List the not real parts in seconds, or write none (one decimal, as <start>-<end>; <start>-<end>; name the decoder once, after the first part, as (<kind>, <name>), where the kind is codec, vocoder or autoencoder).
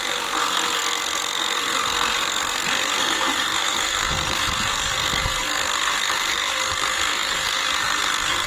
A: 0.0-8.5 (codec, SNAC)